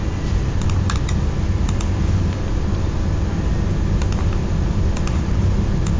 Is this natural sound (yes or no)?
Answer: yes